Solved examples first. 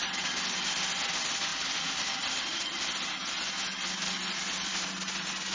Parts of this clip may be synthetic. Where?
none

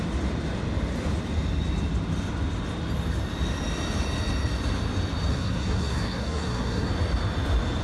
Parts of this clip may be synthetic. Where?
5.3-6.9 (codec, SNAC)

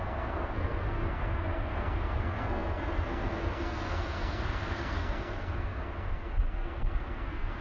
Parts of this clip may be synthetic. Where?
0.0-7.6 (codec, SNAC)

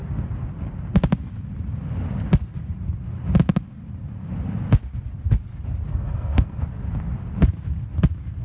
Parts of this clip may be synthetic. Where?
5.9-6.6 (codec, SNAC)

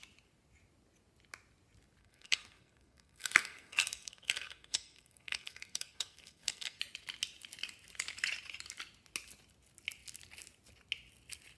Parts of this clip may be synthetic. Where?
2.0-6.8 (codec, SNAC)

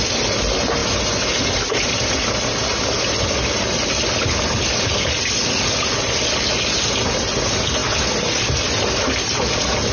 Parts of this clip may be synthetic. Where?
none

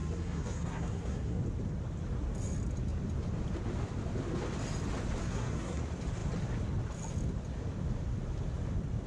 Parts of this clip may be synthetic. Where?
0.0-1.4 (codec, SNAC); 5.2-5.8

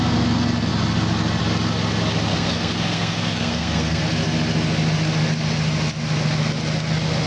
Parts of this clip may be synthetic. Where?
2.3-4.0 (codec, SNAC)